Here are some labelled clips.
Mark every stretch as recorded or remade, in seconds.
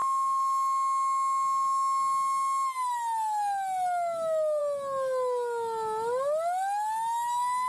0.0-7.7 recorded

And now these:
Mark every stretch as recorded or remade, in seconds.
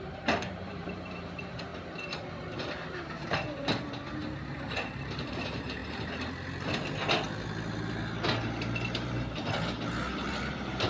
0.0-1.7 remade; 1.7-2.3 recorded; 2.3-4.2 remade; 4.2-4.7 recorded; 4.7-5.8 remade; 5.8-10.4 recorded; 10.4-10.9 remade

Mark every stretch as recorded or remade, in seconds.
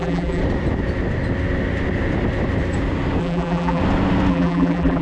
0.0-0.4 remade; 0.4-3.2 recorded; 3.2-3.8 remade; 3.8-4.3 recorded; 4.3-5.0 remade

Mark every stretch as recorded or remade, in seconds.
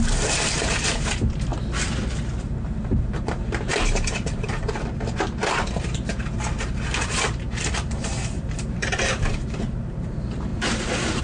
0.0-1.5 remade; 1.5-2.4 recorded; 2.4-5.4 remade; 5.4-7.0 recorded; 7.0-11.2 remade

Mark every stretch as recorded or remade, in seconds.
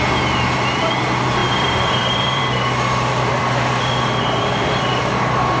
0.0-1.4 recorded; 1.4-4.8 remade; 4.8-5.6 recorded